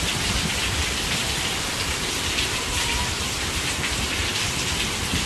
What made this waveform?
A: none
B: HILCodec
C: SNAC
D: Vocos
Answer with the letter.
A